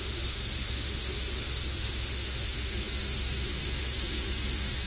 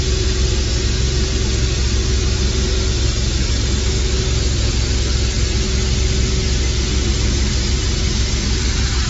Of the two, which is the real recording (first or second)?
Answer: second